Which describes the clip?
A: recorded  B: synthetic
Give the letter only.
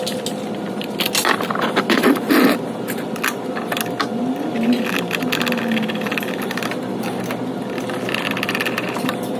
A